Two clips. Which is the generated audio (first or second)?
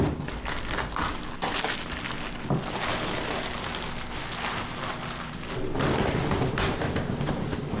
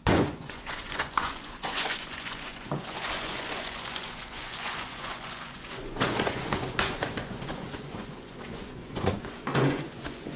second